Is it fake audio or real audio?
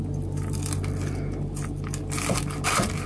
real